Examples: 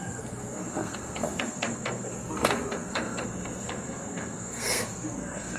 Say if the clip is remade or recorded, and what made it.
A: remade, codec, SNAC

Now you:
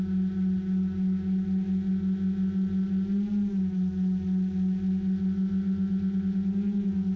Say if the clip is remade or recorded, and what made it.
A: recorded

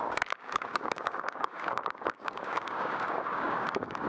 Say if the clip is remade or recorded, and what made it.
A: remade, codec, DAC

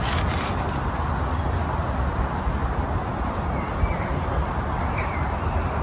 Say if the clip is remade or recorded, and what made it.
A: recorded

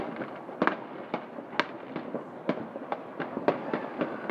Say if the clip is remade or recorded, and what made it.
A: recorded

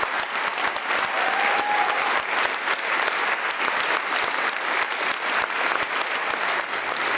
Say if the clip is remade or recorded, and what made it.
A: recorded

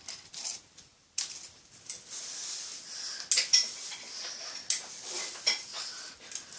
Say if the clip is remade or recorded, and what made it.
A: recorded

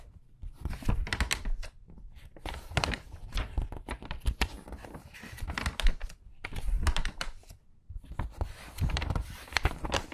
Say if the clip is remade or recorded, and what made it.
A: remade, vocoder, BigVGAN v2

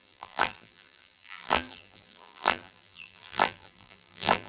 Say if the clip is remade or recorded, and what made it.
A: remade, vocoder, BigVGAN v2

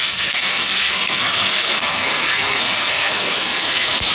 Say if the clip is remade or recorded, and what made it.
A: remade, codec, SNAC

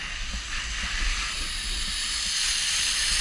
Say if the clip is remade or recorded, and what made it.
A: recorded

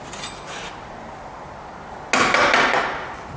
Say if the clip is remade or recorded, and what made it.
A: recorded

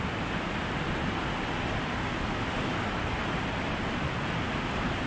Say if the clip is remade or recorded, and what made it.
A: recorded